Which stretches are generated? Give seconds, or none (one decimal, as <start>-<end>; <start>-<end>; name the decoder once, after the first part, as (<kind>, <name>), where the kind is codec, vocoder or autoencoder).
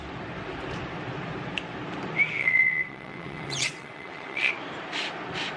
2.4-4.5 (vocoder, WaveNeXt)